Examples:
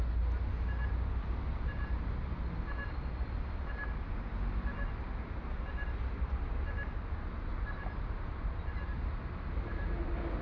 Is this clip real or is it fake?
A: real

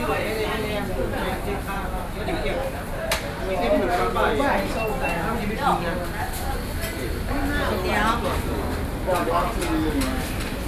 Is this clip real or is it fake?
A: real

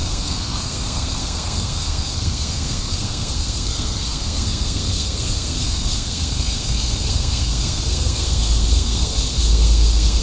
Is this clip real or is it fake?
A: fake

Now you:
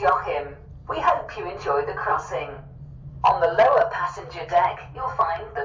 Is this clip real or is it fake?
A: real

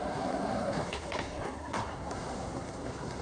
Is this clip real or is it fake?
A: fake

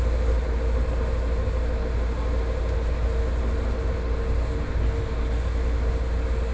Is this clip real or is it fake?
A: real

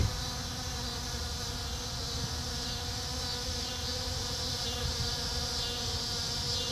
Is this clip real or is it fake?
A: real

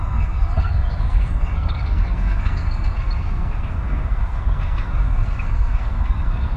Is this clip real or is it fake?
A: fake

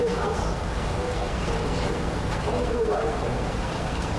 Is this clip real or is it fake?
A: fake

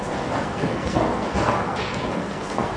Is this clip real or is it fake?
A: fake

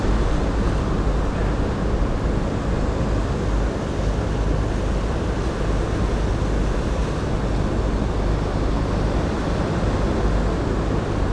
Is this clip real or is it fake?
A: real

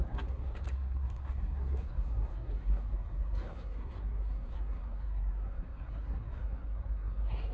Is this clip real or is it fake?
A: fake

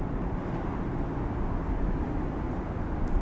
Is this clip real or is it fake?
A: real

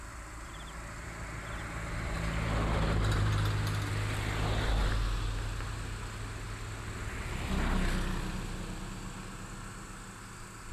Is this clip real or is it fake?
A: real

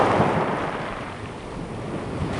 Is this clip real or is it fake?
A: real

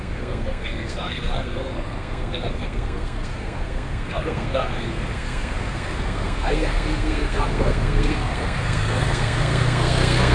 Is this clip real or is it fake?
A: fake